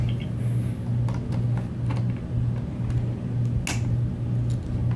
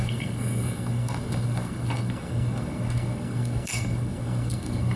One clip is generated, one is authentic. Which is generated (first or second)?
second